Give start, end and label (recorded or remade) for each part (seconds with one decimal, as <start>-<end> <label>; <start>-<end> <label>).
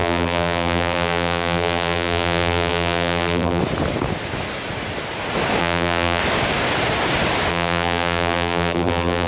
0.0-3.6 remade; 3.6-5.6 recorded; 5.6-6.2 remade; 6.2-7.5 recorded; 7.5-9.3 remade